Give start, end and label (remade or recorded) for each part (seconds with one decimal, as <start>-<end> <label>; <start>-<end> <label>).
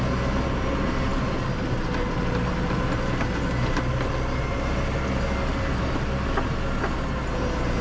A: 0.0-7.8 recorded